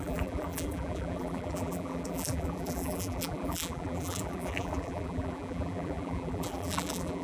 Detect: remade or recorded remade